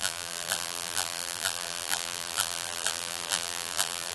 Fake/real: fake